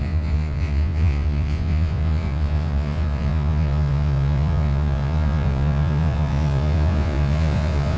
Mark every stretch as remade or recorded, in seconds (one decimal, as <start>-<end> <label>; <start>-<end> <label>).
0.0-8.0 remade